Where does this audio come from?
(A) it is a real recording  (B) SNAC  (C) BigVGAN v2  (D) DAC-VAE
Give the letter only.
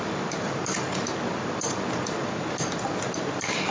C